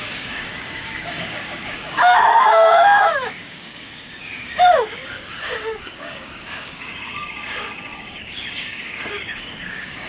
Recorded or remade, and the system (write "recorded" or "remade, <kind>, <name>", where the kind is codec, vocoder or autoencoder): remade, codec, DAC